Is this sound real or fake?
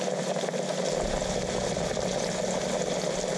real